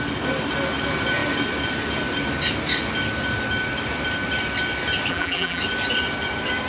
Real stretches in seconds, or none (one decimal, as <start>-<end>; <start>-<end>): 0.0-5.1; 5.6-6.7